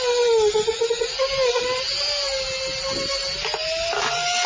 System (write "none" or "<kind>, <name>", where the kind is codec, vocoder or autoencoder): none